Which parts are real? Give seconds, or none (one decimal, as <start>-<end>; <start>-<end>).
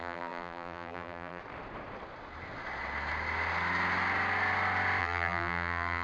1.4-5.0